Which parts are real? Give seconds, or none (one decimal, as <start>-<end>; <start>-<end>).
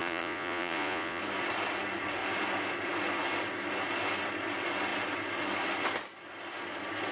1.2-7.1